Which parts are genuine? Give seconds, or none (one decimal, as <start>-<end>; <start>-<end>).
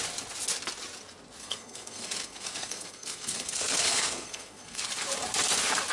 0.0-1.4; 4.9-5.9